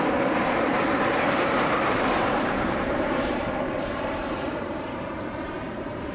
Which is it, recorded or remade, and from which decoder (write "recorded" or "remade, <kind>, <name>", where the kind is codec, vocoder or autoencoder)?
remade, vocoder, BigVGAN v2